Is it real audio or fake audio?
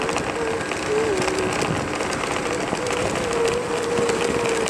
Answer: real